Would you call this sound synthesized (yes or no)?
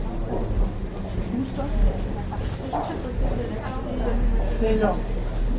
no